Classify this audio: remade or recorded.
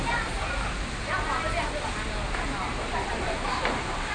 recorded